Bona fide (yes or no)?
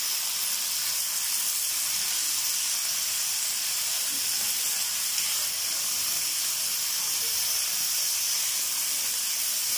yes